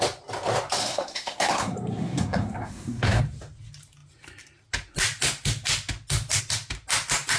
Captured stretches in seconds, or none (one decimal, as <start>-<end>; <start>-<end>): 0.0-0.8; 3.2-7.4